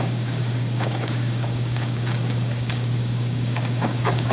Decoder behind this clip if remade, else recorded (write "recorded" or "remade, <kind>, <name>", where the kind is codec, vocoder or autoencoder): remade, codec, DAC